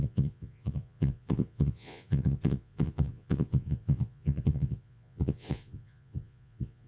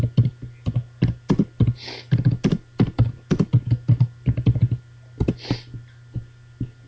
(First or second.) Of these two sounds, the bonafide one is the second